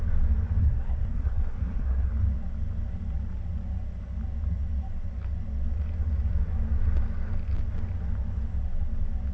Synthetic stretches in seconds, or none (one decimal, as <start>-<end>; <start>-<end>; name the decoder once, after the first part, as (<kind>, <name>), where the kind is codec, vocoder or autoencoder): 0.6-2.1 (codec, SNAC)